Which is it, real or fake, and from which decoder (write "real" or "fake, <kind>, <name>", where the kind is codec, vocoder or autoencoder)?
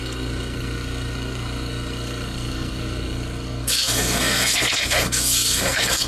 fake, codec, SNAC